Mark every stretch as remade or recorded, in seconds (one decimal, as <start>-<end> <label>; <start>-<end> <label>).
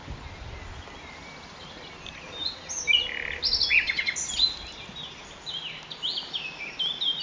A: 0.0-7.2 recorded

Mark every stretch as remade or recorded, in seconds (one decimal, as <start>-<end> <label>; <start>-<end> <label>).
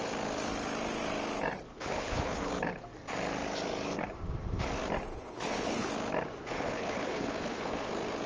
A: 0.0-1.7 recorded; 1.7-2.5 remade; 2.5-5.1 recorded; 5.1-5.9 remade; 5.9-6.4 recorded; 6.4-7.9 remade; 7.9-8.3 recorded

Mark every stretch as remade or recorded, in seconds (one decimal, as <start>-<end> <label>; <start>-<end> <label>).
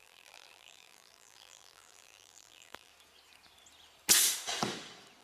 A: 0.0-2.9 remade; 2.9-5.2 recorded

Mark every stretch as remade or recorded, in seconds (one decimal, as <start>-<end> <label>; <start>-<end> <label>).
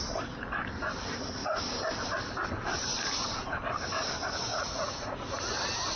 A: 0.0-4.5 recorded; 4.5-5.2 remade; 5.2-6.0 recorded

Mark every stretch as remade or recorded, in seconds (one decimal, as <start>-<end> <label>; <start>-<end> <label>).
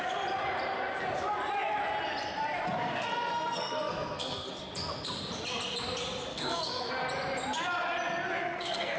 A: 0.0-2.8 recorded; 2.8-4.5 remade; 4.5-6.3 recorded; 6.3-6.9 remade; 6.9-8.4 recorded; 8.4-9.0 remade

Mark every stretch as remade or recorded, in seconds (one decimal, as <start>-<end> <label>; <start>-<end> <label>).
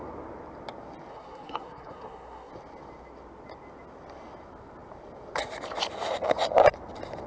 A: 0.0-1.1 recorded; 1.1-2.5 remade; 2.5-7.3 recorded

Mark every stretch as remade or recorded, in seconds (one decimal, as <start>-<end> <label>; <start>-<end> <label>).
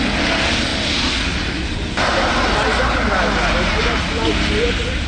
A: 0.0-5.1 recorded